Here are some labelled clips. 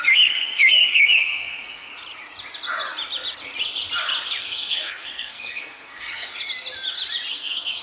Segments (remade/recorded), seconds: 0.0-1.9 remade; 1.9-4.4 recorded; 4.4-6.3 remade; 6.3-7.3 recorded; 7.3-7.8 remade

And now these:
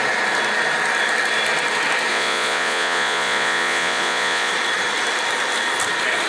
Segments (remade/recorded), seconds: 0.0-2.1 recorded; 2.1-4.5 remade; 4.5-6.3 recorded

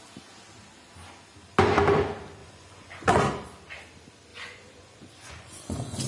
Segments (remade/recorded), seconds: 0.0-2.4 recorded; 2.4-3.2 remade; 3.2-4.3 recorded; 4.3-6.1 remade